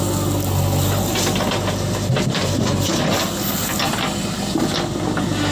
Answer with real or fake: real